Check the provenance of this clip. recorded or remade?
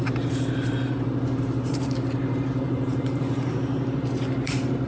remade